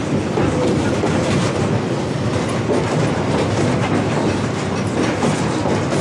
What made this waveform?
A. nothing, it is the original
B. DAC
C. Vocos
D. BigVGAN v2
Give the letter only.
A